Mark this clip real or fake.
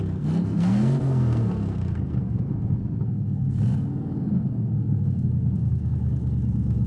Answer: fake